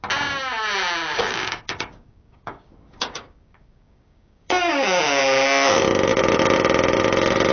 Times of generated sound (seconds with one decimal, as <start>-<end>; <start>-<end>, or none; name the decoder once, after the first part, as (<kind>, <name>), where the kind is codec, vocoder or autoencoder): 1.1-5.2 (codec, DAC)